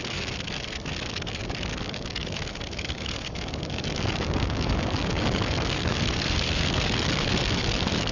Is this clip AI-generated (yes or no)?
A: yes